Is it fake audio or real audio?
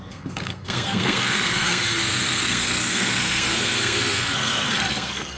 fake